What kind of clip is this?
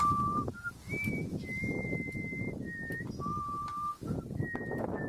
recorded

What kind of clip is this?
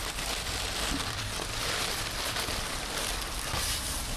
remade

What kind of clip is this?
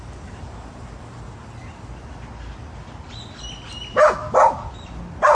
recorded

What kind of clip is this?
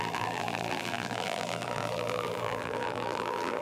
remade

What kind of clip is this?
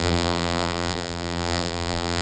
remade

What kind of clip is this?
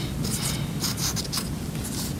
recorded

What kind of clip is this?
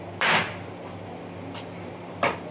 remade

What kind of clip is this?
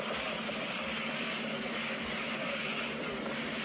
recorded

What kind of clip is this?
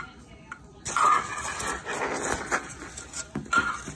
recorded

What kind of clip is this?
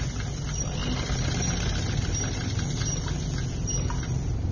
recorded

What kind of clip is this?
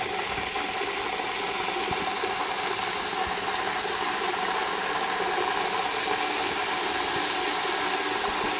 recorded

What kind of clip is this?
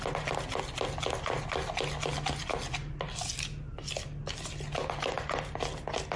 recorded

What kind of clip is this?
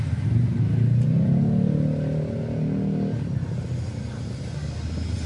recorded